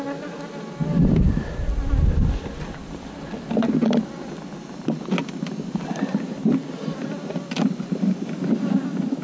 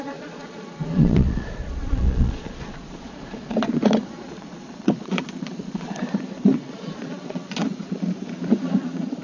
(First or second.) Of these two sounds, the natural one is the first